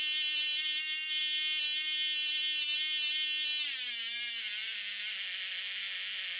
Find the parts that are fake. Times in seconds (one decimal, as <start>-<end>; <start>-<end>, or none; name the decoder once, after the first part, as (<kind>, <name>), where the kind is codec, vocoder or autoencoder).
none